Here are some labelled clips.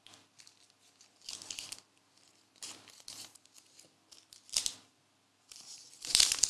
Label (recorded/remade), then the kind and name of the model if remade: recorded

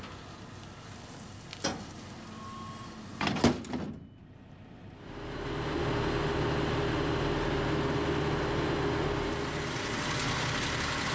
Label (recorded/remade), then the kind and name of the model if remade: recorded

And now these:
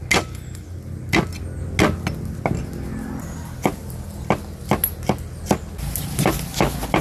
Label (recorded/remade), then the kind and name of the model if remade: recorded